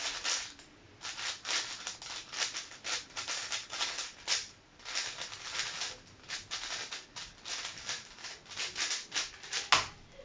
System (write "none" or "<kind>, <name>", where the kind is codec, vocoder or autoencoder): none